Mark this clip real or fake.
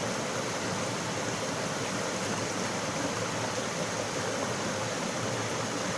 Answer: real